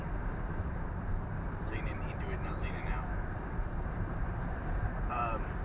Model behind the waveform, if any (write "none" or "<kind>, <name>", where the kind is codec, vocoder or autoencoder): vocoder, BigVGAN v2